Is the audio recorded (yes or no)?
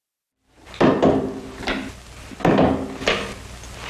yes